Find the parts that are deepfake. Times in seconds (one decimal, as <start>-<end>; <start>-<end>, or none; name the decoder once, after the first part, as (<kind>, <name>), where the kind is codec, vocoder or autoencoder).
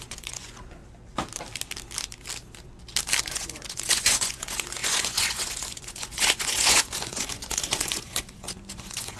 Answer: 0.0-0.8 (vocoder, Vocos); 3.2-9.2